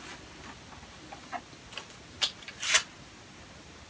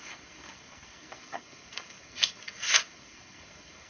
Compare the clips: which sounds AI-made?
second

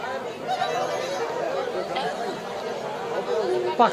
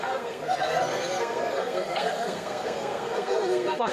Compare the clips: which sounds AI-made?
second